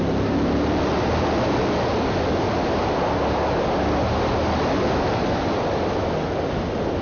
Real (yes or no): yes